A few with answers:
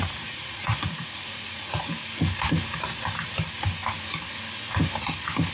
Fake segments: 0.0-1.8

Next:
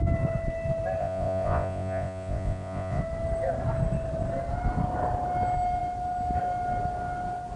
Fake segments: 1.0-3.0

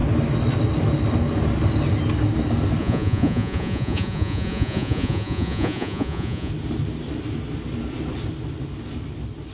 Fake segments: 2.8-6.5

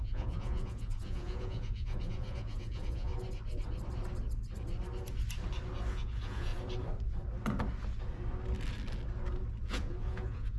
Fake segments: 0.0-3.1; 5.9-6.5; 9.7-10.6